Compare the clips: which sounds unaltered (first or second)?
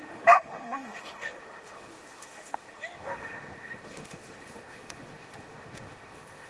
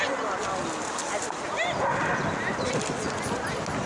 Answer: second